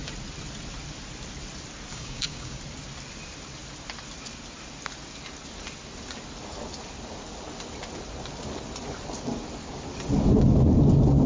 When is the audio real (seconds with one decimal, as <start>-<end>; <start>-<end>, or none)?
0.0-1.9; 2.6-11.3